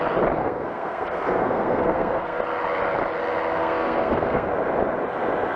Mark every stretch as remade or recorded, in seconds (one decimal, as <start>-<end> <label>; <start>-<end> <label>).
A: 0.0-0.4 recorded; 0.4-2.4 remade; 2.4-3.6 recorded; 3.6-4.5 remade; 4.5-5.6 recorded